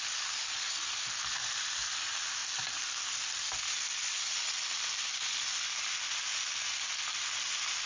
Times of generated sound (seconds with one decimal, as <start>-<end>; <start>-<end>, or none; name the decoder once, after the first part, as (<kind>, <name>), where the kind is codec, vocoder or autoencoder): none